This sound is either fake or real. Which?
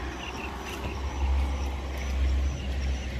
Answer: real